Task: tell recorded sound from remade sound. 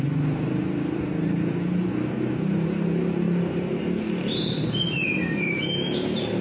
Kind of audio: recorded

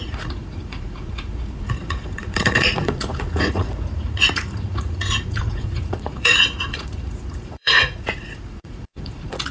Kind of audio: remade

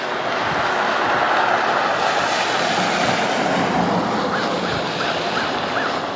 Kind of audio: recorded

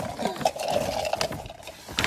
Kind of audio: recorded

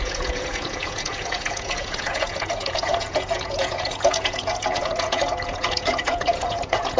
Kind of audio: remade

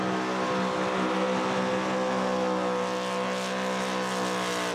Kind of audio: recorded